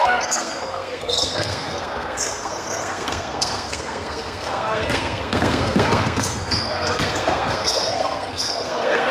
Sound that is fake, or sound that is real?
fake